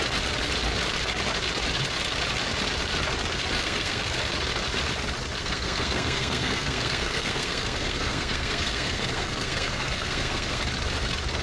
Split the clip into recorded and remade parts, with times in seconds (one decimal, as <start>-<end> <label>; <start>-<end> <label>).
0.0-3.6 recorded; 3.6-4.2 remade; 4.2-5.4 recorded; 5.4-10.6 remade; 10.6-11.4 recorded